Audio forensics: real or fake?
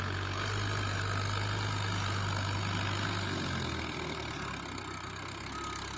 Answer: real